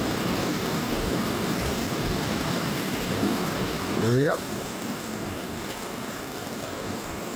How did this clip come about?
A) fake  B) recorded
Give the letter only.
A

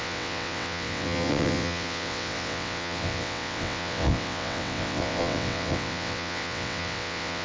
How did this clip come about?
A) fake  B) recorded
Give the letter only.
A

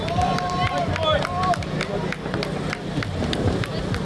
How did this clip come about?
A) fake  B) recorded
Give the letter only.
B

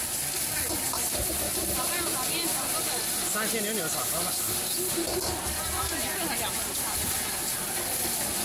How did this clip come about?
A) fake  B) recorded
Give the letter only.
B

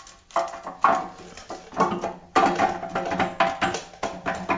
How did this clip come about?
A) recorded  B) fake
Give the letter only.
A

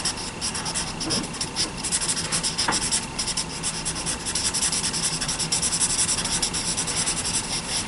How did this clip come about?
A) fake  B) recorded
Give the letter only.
B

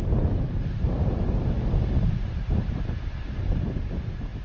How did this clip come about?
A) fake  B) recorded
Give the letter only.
B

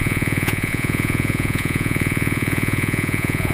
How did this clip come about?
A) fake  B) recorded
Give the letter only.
A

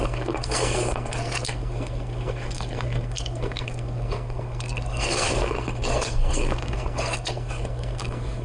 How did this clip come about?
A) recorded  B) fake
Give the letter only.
B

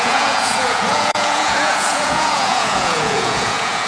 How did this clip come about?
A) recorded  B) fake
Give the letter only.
B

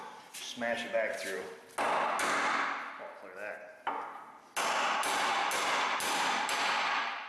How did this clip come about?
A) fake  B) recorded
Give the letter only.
B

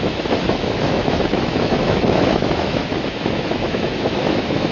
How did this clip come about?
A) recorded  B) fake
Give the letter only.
B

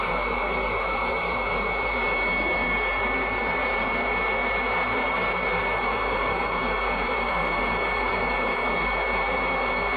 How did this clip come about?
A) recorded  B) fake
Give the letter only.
B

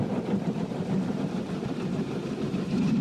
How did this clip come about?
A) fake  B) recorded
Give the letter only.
A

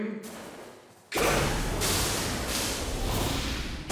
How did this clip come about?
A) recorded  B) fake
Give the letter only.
A